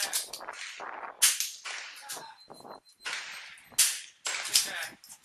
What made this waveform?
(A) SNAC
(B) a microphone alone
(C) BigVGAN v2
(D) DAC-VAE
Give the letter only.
B